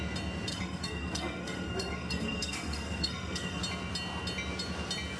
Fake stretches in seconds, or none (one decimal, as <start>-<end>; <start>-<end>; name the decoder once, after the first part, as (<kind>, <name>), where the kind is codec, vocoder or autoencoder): 0.5-3.6 (codec, SNAC)